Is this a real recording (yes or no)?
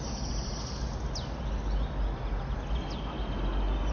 yes